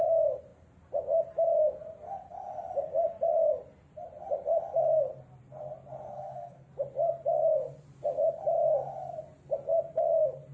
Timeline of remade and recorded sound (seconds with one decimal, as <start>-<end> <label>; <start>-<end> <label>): 0.0-6.1 recorded; 6.1-6.7 remade; 6.7-10.5 recorded